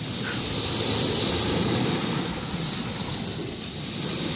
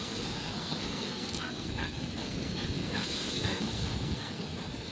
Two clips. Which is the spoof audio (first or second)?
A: second